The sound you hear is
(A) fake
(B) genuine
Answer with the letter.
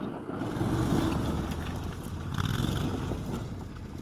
B